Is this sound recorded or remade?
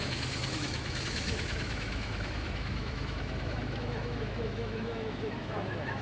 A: remade